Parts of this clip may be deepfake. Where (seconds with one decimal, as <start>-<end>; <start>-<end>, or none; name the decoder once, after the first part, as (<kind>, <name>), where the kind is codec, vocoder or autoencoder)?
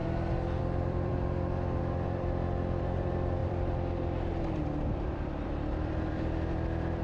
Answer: 0.6-1.1 (vocoder, BigVGAN v2); 1.8-7.0